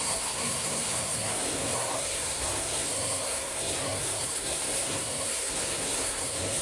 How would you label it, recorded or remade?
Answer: remade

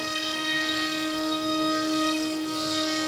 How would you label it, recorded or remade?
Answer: remade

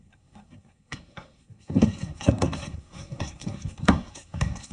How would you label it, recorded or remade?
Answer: remade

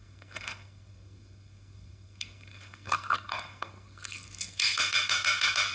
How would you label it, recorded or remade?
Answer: remade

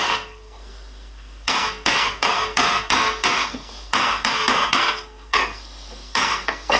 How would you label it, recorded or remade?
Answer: remade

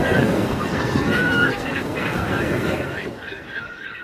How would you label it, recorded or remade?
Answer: remade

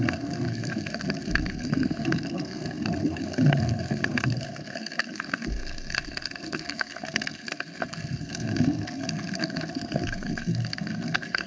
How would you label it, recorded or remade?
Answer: remade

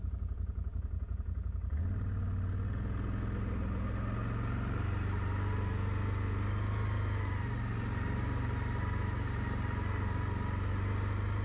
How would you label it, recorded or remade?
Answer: recorded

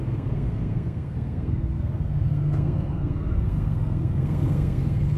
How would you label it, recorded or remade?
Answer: remade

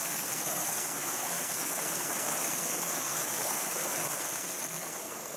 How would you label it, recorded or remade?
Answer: remade